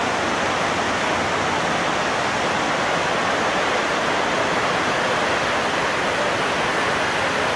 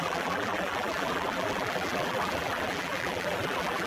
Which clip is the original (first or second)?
first